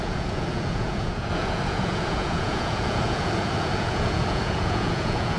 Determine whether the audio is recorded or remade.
remade